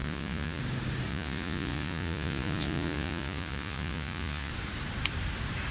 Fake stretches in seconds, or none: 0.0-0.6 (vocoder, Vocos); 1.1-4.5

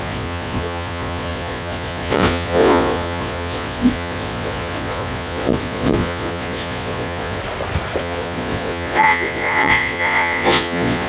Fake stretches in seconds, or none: 0.0-7.4 (vocoder, Vocos); 8.0-11.1

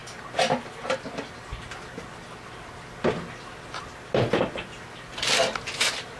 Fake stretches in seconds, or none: none

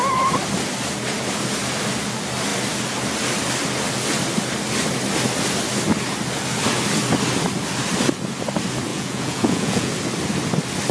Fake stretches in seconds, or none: 8.9-9.9 (vocoder, Vocos)